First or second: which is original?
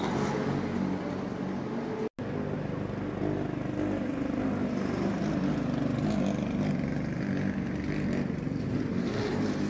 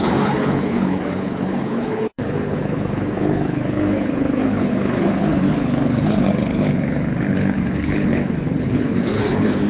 first